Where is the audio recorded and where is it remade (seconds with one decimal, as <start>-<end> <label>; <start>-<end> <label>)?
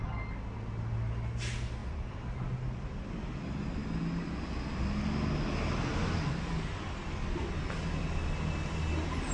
0.0-1.8 recorded; 1.8-3.1 remade; 3.1-9.3 recorded